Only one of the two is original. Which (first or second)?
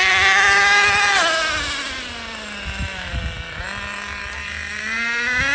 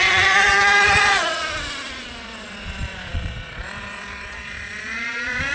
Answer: first